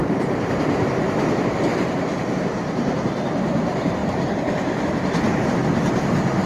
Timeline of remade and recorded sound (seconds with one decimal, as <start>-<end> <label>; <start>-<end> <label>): 0.0-1.3 recorded; 1.3-5.6 remade; 5.6-6.1 recorded; 6.1-6.5 remade